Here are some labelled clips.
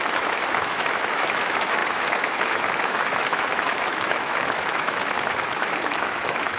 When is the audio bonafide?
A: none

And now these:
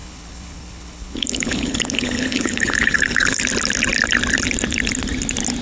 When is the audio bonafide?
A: 3.4-5.6

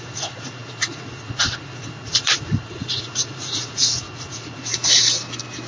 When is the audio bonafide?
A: 4.7-5.7

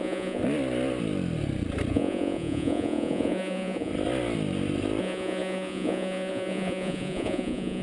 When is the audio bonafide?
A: 0.4-1.9; 3.9-5.0

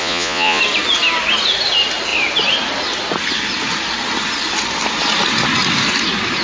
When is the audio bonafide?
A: 0.6-6.4

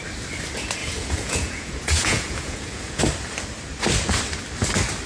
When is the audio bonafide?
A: 0.0-0.8; 3.0-5.1

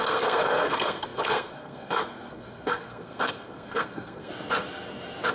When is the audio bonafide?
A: 4.3-5.3